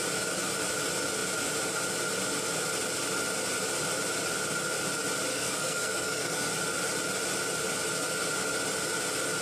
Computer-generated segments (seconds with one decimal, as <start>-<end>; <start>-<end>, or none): 5.3-6.5